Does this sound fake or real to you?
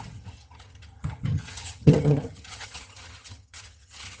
fake